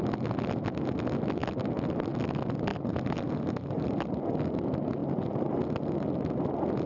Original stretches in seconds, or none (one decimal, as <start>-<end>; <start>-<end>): 0.0-2.7; 4.0-5.0; 5.5-6.9